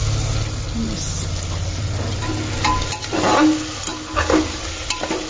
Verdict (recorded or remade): recorded